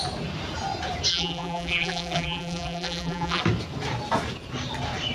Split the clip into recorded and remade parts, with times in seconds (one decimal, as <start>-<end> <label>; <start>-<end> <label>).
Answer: 0.0-1.1 recorded; 1.1-3.4 remade; 3.4-5.1 recorded